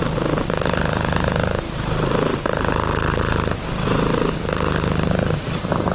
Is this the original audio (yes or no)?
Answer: yes